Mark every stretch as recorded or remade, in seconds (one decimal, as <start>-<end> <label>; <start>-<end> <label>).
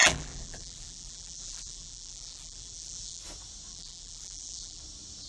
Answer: 0.0-3.2 remade; 3.2-3.7 recorded; 3.7-4.8 remade; 4.8-5.3 recorded